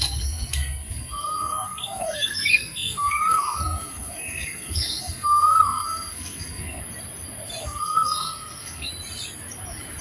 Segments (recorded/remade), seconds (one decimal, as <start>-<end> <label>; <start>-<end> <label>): 0.0-6.8 remade; 6.8-7.6 recorded; 7.6-8.9 remade; 8.9-10.0 recorded